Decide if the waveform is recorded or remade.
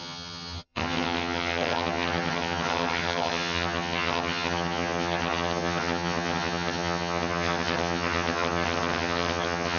remade